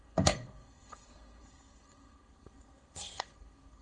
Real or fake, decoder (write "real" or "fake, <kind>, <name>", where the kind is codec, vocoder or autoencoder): fake, codec, SNAC